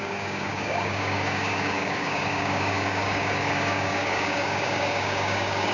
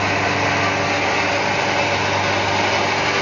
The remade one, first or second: first